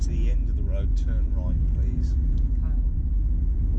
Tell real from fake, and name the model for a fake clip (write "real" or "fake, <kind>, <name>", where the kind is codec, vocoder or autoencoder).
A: real